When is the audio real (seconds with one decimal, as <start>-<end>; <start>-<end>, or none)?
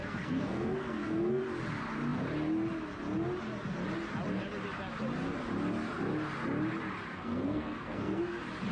1.4-7.1; 8.2-8.7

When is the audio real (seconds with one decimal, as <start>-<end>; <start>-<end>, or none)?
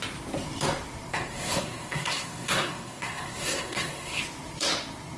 0.0-1.1; 4.2-5.2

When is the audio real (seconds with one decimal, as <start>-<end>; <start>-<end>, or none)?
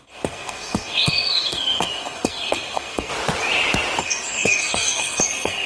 3.1-4.0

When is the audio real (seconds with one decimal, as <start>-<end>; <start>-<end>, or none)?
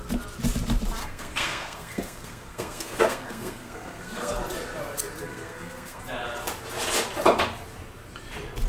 0.0-1.0; 4.3-5.3; 6.0-8.7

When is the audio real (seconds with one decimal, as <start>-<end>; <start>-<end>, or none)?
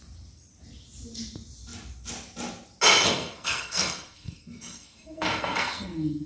0.0-2.9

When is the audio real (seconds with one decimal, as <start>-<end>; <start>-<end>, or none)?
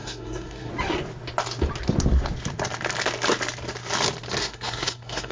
0.7-4.4